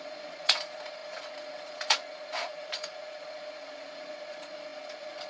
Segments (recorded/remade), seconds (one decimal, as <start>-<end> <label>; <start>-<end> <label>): 0.0-5.3 remade